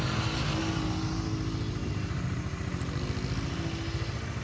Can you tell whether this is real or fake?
real